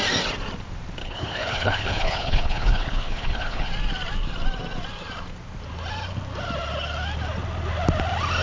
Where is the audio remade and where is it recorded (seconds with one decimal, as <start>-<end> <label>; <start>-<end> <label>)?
0.0-1.0 recorded; 1.0-3.7 remade; 3.7-8.4 recorded